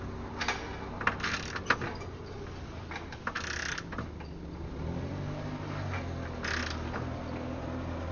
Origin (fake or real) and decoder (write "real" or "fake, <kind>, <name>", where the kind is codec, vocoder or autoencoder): real